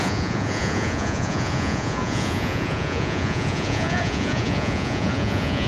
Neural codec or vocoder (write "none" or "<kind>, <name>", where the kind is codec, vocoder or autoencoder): vocoder, Vocos